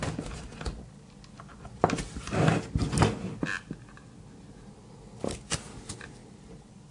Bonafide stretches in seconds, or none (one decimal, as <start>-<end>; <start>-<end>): 0.0-6.9